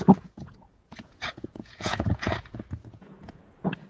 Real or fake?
fake